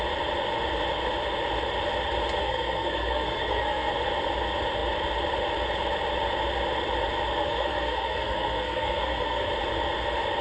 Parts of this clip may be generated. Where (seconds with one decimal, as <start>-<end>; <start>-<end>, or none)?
2.4-3.9; 7.4-9.5